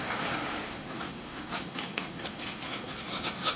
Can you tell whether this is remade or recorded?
remade